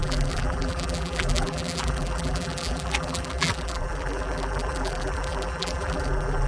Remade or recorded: remade